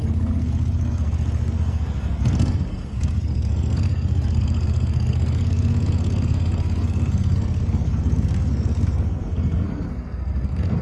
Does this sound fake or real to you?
fake